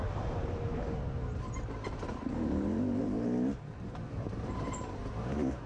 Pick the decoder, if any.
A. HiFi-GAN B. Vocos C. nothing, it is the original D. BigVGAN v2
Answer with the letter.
D